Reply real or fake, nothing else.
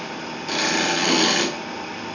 real